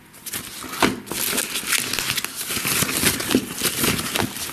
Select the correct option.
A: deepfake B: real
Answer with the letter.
B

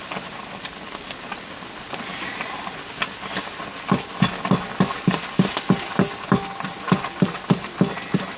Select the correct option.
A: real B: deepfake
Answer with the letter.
A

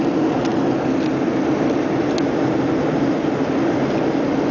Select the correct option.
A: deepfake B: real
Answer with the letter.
B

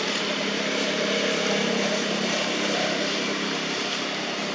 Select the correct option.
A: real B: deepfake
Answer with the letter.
A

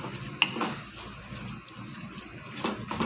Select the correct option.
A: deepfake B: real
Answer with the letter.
B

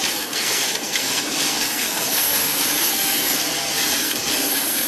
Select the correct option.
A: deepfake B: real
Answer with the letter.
A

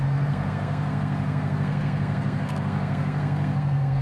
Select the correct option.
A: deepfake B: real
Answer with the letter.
A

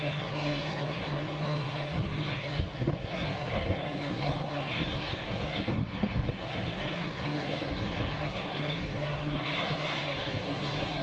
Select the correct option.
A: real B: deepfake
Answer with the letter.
B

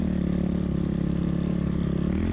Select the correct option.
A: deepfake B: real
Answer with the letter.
B